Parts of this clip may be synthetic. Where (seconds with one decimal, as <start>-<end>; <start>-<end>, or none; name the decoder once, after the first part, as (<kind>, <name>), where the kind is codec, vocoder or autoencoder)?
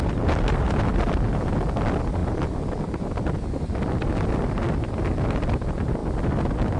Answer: none